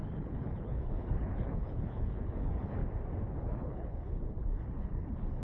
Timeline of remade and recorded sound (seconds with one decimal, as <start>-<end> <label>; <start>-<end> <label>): 0.0-2.8 remade; 2.8-3.4 recorded; 3.4-5.4 remade